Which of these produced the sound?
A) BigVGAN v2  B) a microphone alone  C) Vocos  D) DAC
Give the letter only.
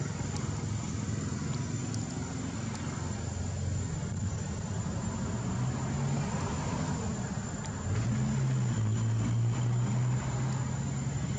B